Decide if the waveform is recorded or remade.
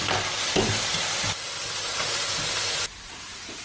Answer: recorded